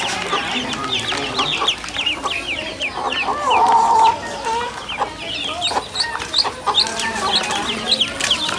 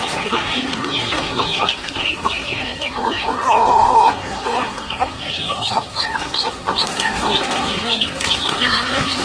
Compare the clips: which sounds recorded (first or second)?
first